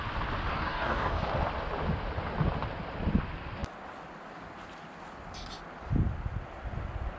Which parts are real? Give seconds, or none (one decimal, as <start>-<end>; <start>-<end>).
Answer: 0.0-0.5; 1.3-7.2